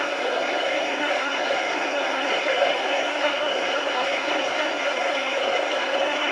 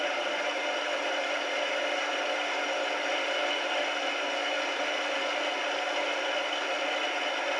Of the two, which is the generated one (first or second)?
first